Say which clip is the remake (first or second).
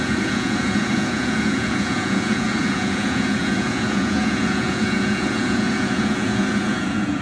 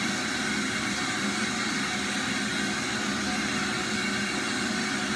first